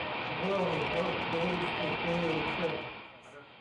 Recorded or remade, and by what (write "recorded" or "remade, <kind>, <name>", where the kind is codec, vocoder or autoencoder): remade, autoencoder, DAC-VAE